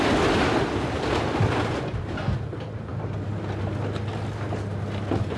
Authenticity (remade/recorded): recorded